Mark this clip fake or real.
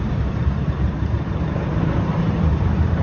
fake